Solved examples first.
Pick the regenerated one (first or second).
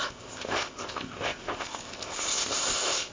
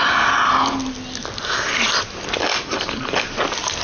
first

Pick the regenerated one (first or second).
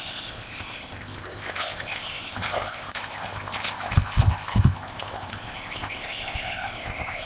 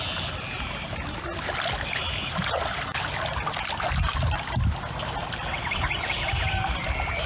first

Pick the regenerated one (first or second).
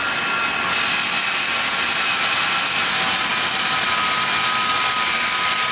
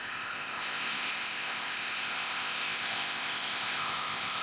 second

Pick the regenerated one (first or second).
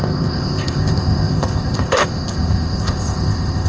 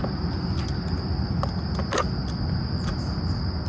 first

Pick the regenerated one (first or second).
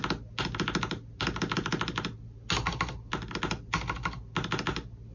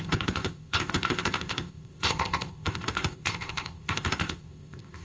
second